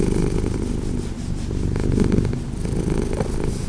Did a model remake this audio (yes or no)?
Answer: no